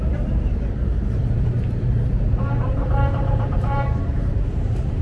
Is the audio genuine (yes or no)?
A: no